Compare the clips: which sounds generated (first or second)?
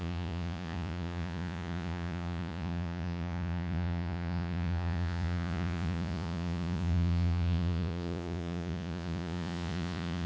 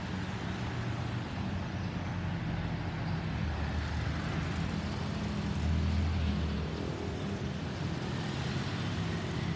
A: first